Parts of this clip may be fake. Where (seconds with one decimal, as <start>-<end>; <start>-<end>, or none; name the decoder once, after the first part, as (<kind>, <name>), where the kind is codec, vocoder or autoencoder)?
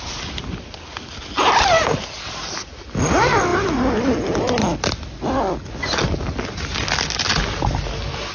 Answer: none